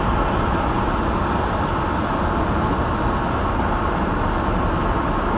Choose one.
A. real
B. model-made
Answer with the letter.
A